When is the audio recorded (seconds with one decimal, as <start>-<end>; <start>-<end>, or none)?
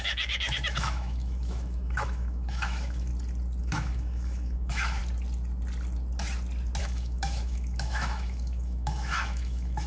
3.1-3.6; 5.0-6.8